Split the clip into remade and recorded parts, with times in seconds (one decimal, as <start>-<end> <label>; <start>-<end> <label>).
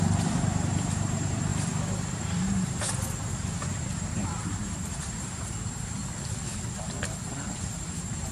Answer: 0.0-1.5 remade; 1.5-2.1 recorded; 2.1-6.0 remade; 6.0-7.6 recorded; 7.6-8.3 remade